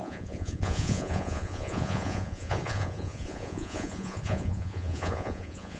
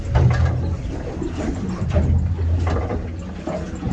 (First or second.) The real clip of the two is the second